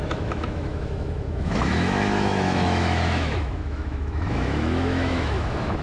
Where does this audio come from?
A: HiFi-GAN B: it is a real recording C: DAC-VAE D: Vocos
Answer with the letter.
C